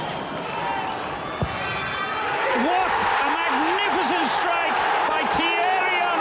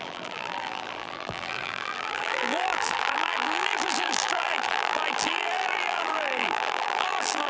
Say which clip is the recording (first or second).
first